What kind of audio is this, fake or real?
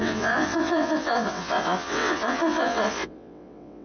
fake